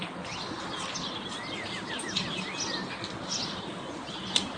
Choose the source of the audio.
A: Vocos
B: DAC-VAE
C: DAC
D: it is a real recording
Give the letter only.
D